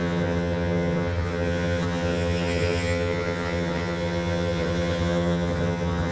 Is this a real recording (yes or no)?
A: no